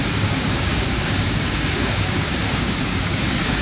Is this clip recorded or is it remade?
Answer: remade